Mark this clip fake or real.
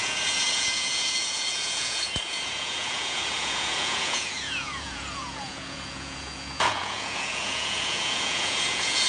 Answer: fake